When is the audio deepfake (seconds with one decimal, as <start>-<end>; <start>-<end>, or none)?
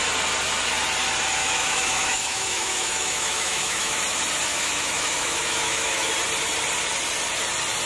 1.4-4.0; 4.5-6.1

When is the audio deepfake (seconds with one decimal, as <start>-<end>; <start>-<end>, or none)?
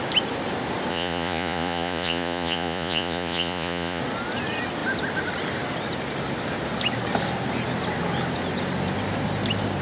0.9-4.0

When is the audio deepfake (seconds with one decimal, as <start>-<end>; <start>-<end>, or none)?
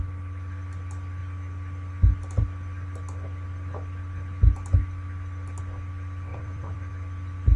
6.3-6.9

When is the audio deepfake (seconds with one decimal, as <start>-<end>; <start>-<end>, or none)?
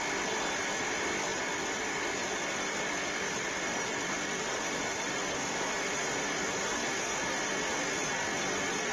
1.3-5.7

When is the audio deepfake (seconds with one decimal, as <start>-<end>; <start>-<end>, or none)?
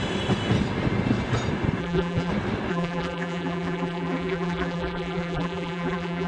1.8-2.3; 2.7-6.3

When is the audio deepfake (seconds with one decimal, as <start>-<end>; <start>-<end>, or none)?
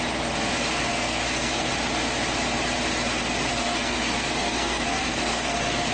0.9-1.7; 3.5-5.9